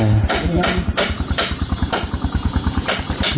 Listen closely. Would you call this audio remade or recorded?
recorded